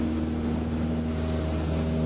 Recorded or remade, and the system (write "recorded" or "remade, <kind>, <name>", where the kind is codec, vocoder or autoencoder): recorded